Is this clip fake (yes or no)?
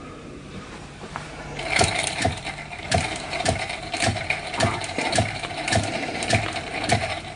yes